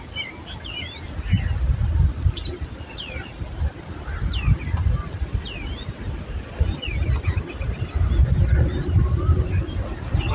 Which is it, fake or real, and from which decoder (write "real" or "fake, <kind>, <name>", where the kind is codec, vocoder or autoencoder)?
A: real